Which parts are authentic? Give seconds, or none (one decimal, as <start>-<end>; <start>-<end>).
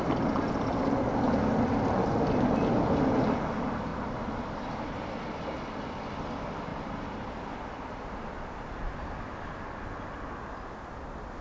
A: 0.0-3.9; 5.4-6.7; 7.4-11.4